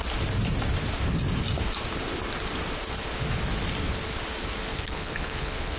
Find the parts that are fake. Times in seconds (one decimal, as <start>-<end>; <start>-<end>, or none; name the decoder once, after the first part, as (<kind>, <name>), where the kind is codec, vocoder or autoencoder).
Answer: 4.7-5.8 (codec, HILCodec)